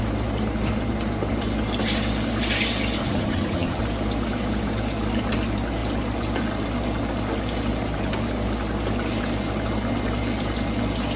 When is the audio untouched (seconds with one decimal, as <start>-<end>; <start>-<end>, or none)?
0.0-3.0; 3.8-11.2